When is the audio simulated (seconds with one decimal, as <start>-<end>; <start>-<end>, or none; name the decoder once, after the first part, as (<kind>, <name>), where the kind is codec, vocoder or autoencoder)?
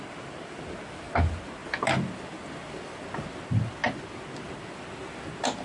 none